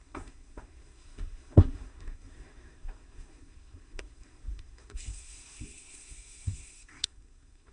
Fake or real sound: fake